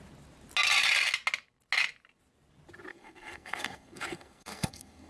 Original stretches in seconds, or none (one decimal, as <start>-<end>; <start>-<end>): 0.0-2.9